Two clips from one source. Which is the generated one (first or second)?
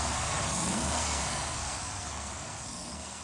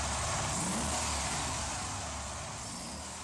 first